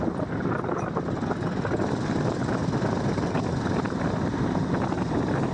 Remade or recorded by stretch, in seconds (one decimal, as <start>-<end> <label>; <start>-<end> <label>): 0.0-2.6 recorded; 2.6-3.3 remade; 3.3-5.5 recorded